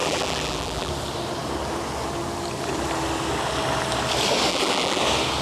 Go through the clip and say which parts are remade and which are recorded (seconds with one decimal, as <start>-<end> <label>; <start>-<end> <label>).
0.0-0.9 remade; 0.9-4.5 recorded; 4.5-5.0 remade; 5.0-5.4 recorded